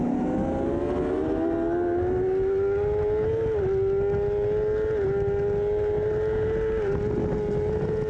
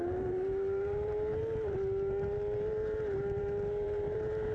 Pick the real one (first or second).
first